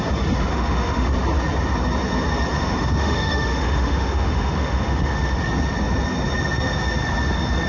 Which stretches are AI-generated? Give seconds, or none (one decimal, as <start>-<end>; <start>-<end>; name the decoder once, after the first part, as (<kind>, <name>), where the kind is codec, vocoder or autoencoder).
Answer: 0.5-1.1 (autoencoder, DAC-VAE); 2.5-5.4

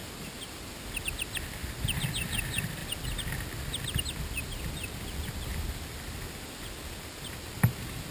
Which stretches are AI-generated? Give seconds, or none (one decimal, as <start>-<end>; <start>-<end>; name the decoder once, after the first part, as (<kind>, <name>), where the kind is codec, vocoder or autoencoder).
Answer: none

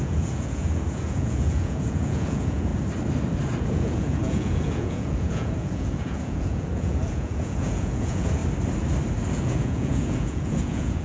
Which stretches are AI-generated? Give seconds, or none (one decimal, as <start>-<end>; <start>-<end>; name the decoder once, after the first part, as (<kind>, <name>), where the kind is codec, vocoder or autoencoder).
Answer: 0.0-2.7 (vocoder, Vocos); 3.6-8.4; 9.3-11.0

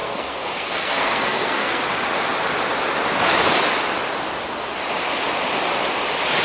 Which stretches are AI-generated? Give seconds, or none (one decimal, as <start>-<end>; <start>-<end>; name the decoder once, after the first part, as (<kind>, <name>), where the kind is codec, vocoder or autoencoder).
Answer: 0.0-1.8 (codec, SNAC)